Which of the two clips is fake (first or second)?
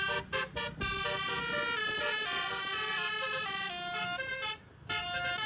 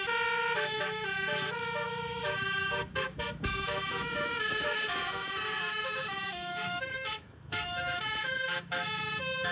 second